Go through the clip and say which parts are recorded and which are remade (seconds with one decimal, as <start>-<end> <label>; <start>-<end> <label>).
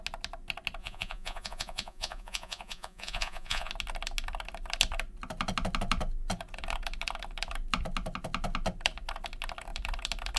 0.0-0.8 recorded; 0.8-3.7 remade; 3.7-10.4 recorded